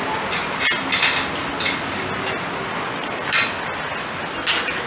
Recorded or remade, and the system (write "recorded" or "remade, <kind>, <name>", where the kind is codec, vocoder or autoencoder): recorded